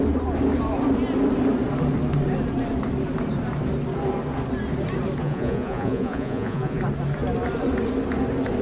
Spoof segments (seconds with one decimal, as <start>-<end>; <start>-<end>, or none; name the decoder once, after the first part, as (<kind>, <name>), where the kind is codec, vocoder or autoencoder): 5.2-6.8 (vocoder, Vocos)

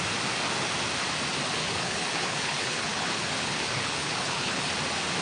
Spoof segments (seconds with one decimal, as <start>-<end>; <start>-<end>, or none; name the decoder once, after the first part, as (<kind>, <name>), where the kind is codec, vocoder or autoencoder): 1.6-4.7 (codec, HILCodec)

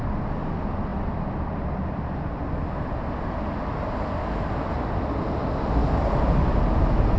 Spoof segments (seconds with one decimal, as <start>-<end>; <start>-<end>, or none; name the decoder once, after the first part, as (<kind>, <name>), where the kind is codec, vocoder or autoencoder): none

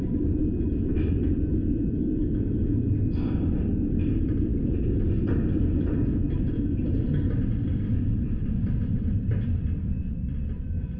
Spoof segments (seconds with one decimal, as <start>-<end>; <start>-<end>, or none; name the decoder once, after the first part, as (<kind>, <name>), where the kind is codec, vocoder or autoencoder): none